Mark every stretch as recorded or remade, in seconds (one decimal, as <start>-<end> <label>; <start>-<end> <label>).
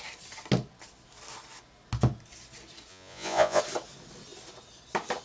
0.0-2.9 recorded; 2.9-3.6 remade; 3.6-5.2 recorded